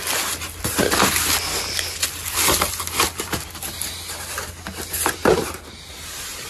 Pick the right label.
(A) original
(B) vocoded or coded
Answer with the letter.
A